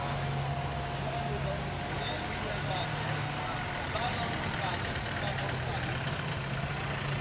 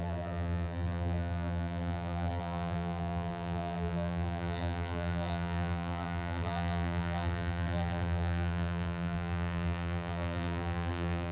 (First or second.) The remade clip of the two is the second